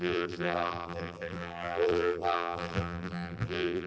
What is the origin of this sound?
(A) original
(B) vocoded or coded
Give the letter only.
B